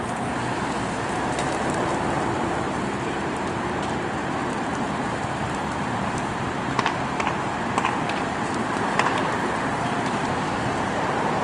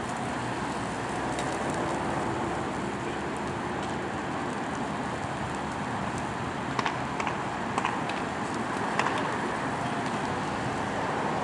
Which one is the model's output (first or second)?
first